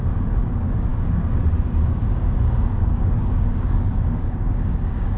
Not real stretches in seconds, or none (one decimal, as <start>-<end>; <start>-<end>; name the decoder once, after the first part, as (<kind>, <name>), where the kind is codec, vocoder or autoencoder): 0.0-5.2 (codec, DAC)